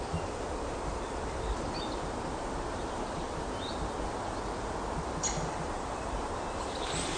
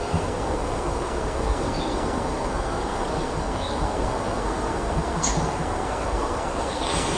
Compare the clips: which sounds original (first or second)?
first